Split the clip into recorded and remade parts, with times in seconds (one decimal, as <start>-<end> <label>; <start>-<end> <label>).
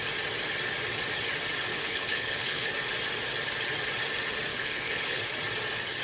0.0-1.7 recorded; 1.7-2.7 remade; 2.7-4.5 recorded; 4.5-5.2 remade; 5.2-6.0 recorded